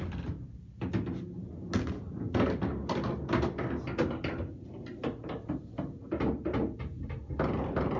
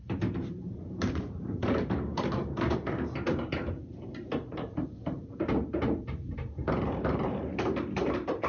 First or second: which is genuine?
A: first